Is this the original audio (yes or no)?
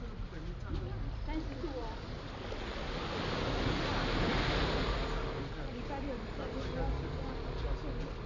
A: yes